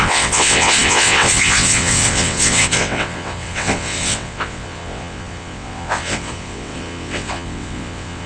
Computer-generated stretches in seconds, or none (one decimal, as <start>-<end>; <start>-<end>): 0.0-8.3